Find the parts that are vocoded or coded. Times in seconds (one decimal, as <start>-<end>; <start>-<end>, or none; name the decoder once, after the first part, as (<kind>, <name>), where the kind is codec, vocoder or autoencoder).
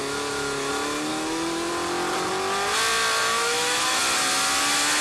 0.0-0.7 (autoencoder, DAC-VAE); 1.1-1.7; 3.2-4.0